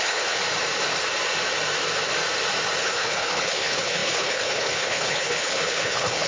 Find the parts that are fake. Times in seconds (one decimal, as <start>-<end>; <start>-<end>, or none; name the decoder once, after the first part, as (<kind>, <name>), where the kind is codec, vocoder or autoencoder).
0.0-0.4 (codec, HILCodec); 2.8-6.3